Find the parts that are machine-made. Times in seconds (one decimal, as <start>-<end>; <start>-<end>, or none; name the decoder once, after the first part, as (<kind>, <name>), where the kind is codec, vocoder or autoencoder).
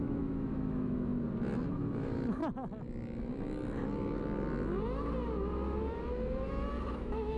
0.0-1.1 (autoencoder, DAC-VAE); 1.7-2.4; 6.8-7.4